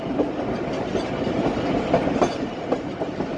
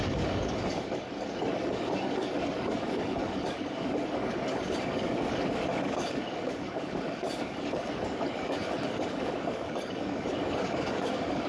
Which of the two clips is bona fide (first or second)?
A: first